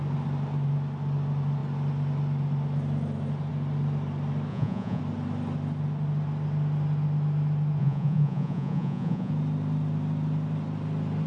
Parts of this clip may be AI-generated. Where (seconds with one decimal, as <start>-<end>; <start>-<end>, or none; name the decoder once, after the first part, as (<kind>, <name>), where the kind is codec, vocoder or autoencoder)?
4.5-5.0 (vocoder, Vocos); 7.8-9.3